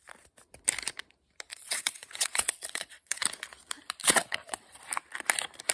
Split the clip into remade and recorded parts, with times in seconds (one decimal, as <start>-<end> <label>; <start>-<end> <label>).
0.0-1.5 recorded; 1.5-3.2 remade; 3.2-4.0 recorded; 4.0-4.7 remade; 4.7-5.7 recorded